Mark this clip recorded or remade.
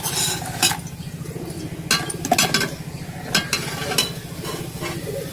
recorded